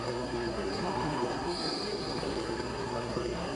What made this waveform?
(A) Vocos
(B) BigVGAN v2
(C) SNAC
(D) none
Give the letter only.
C